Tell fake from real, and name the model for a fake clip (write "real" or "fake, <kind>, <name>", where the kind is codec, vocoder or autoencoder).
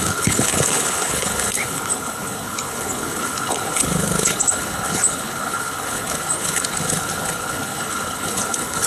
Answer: fake, codec, HILCodec